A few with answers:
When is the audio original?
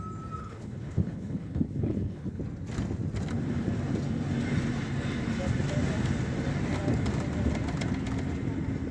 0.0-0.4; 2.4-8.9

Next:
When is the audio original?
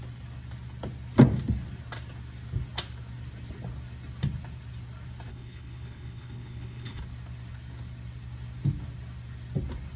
0.0-5.3; 7.0-10.0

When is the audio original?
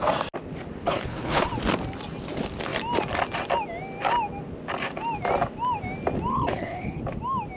0.0-0.8; 1.5-6.3; 7.0-7.6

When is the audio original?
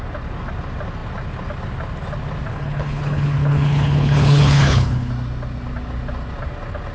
0.0-2.5; 5.1-6.9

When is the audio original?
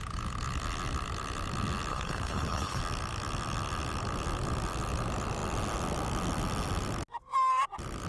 0.0-1.9; 2.8-8.1